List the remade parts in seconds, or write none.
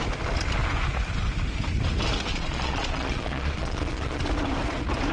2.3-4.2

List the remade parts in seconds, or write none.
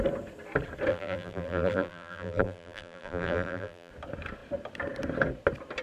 0.9-3.9